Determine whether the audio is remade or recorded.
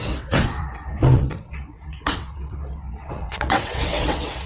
remade